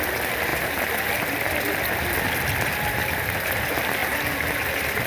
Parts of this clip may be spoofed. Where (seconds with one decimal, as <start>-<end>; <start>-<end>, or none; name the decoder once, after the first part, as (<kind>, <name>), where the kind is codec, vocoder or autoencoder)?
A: 0.5-1.1 (vocoder, BigVGAN v2); 3.0-3.5